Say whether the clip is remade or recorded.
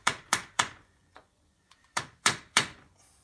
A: remade